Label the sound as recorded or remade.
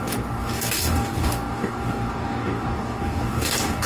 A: remade